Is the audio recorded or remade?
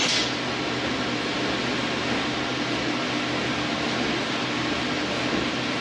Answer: recorded